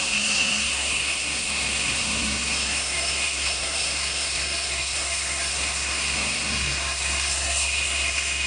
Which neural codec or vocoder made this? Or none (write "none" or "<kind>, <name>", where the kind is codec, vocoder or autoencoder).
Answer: codec, SNAC